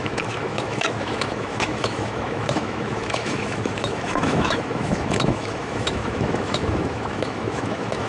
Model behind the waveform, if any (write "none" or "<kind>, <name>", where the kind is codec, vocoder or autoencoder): autoencoder, DAC-VAE